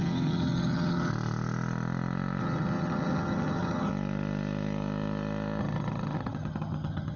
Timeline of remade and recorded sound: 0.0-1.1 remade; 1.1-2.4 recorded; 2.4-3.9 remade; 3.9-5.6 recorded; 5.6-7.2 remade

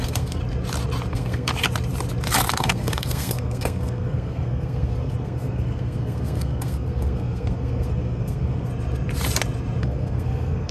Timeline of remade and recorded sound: 0.0-0.4 remade; 0.4-1.1 recorded; 1.1-1.5 remade; 1.5-2.5 recorded; 2.5-8.7 remade; 8.7-9.8 recorded; 9.8-10.7 remade

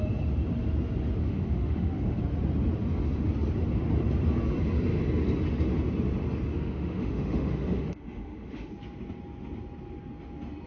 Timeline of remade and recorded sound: 0.0-1.2 recorded; 1.2-2.2 remade; 2.2-6.5 recorded; 6.5-8.7 remade; 8.7-10.7 recorded

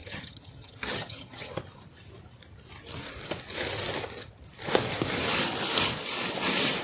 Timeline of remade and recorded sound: 0.0-1.5 remade; 1.5-6.8 recorded